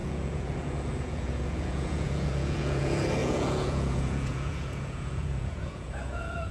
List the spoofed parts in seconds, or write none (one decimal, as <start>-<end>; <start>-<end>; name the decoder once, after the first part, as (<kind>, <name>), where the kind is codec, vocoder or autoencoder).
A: 0.0-6.5 (vocoder, Vocos)